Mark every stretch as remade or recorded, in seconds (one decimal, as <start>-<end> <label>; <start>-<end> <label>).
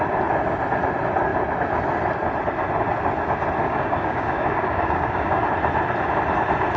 0.0-3.6 recorded; 3.6-5.4 remade; 5.4-6.8 recorded